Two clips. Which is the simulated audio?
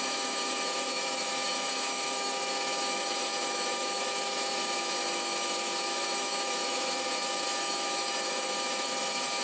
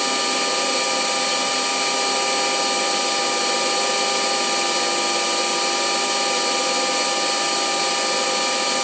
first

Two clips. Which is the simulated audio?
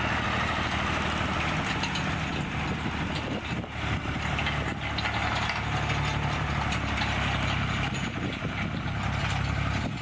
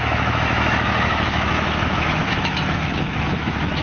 second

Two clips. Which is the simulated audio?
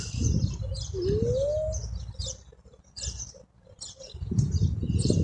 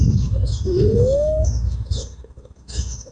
second